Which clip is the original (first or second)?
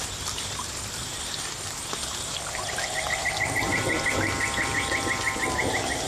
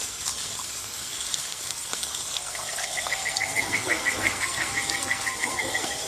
first